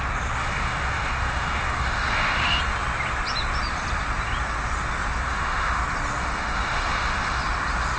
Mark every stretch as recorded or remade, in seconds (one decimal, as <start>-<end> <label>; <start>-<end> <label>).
0.0-0.4 recorded; 0.4-2.6 remade; 2.6-5.3 recorded; 5.3-5.8 remade; 5.8-6.2 recorded; 6.2-7.4 remade; 7.4-8.0 recorded